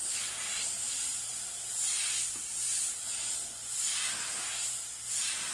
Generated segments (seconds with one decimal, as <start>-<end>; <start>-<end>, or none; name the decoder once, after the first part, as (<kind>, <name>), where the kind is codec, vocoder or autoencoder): none